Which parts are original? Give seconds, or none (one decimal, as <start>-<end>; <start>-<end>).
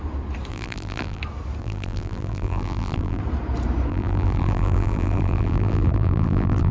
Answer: 0.0-0.5; 1.2-1.6; 3.2-3.9